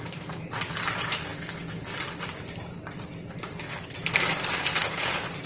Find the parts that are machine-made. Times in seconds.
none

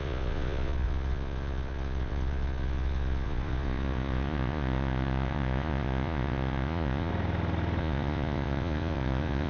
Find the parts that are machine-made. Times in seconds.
0.0-7.1; 7.8-9.5

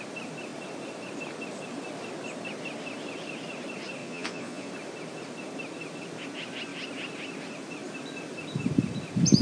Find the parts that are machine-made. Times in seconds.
4.0-4.7

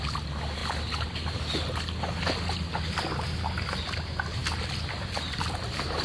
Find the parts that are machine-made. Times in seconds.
none

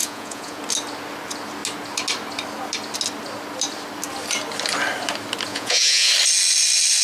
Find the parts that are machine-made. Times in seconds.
0.0-0.6; 5.5-6.1